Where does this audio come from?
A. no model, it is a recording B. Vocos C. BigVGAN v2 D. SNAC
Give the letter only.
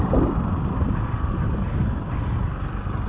A